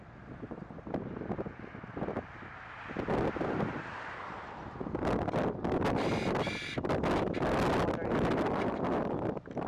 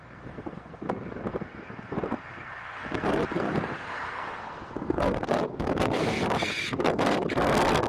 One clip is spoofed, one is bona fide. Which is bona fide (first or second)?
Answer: first